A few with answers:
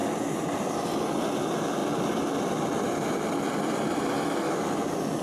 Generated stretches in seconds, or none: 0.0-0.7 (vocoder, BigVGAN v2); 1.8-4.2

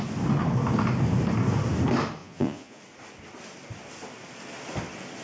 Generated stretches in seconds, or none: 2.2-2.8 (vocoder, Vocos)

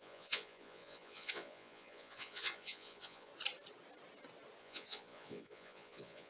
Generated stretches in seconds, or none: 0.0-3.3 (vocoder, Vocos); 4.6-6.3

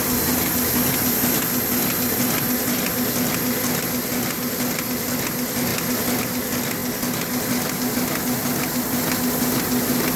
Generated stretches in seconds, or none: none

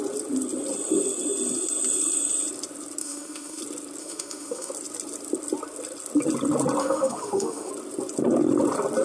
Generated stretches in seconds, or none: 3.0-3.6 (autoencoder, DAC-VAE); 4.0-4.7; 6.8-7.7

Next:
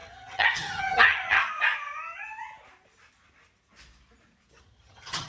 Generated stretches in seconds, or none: 0.0-1.4 (vocoder, HiFi-GAN); 4.6-5.3

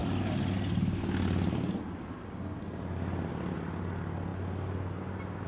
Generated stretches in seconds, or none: none